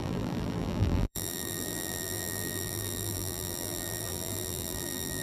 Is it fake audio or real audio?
fake